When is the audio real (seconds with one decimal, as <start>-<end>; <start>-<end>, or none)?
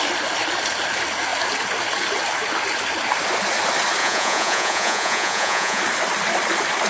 0.0-4.0; 5.8-6.9